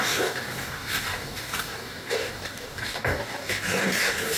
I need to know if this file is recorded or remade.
remade